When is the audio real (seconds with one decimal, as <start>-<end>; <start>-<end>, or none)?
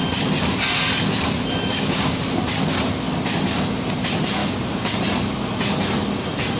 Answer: 0.0-1.7; 2.2-4.4; 5.0-6.6